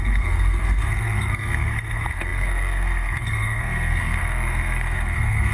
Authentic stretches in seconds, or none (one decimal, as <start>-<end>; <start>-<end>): none